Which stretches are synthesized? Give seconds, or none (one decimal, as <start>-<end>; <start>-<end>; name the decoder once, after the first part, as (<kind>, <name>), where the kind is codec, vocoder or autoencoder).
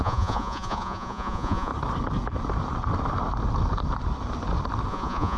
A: 0.0-1.7 (vocoder, Vocos); 4.9-5.4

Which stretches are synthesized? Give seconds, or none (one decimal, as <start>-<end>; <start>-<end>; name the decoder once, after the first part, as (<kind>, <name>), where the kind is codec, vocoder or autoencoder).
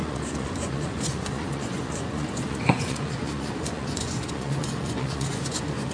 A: 0.0-5.9 (vocoder, Vocos)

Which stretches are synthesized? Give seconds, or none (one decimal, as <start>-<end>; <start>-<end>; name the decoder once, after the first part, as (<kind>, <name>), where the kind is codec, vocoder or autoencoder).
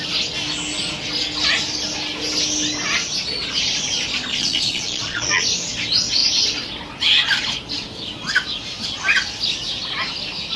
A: 4.3-5.4 (vocoder, Vocos)